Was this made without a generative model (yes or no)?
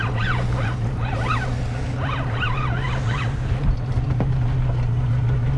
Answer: yes